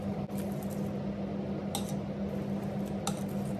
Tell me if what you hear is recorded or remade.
recorded